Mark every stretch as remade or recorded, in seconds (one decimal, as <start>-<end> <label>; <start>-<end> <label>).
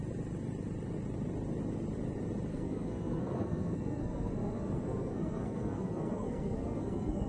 0.0-2.5 recorded; 2.5-7.3 remade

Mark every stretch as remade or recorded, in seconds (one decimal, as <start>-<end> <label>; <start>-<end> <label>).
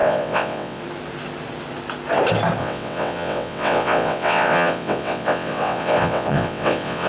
0.0-0.8 remade; 0.8-2.6 recorded; 2.6-7.1 remade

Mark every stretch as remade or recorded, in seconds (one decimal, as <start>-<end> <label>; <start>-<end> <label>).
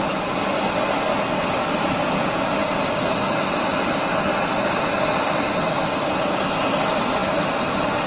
0.0-8.1 recorded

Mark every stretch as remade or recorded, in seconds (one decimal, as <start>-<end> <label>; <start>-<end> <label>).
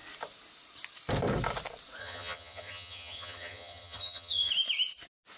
0.0-2.0 recorded; 2.0-4.5 remade; 4.5-5.4 recorded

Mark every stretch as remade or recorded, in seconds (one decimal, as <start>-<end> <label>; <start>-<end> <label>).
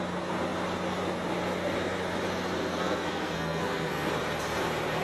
0.0-2.7 recorded; 2.7-4.1 remade; 4.1-5.0 recorded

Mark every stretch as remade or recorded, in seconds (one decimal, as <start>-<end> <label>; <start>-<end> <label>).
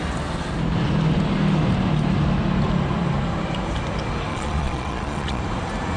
0.0-4.3 recorded; 4.3-5.4 remade; 5.4-6.0 recorded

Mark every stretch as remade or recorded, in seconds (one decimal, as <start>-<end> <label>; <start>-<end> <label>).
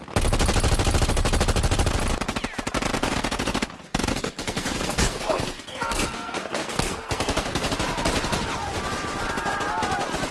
0.0-3.0 recorded; 3.0-7.7 remade; 7.7-10.3 recorded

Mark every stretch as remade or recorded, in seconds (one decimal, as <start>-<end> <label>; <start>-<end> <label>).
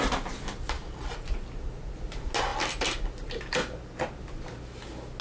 0.0-5.2 recorded